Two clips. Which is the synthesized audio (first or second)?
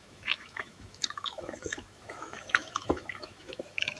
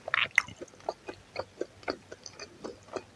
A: first